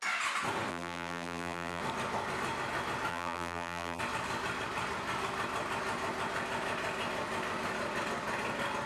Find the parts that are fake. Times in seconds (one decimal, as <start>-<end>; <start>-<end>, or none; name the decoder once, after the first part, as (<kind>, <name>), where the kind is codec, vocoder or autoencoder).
0.7-1.8 (vocoder, BigVGAN v2); 3.1-4.0